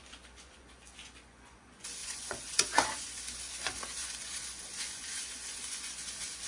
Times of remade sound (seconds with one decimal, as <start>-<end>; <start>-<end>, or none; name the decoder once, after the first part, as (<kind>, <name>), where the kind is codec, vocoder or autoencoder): 0.0-6.5 (vocoder, Vocos)